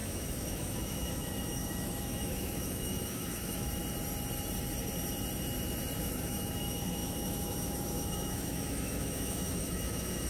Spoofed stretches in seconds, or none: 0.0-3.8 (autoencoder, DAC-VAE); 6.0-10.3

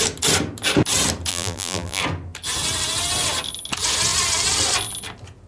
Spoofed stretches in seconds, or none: 1.3-2.0 (vocoder, BigVGAN v2)

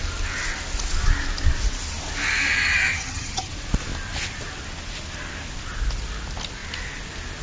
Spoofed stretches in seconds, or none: 2.9-3.5 (vocoder, HiFi-GAN)

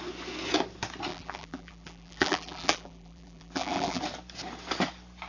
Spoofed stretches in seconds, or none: 1.1-4.0 (vocoder, BigVGAN v2)

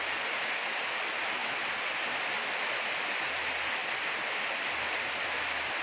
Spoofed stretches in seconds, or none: none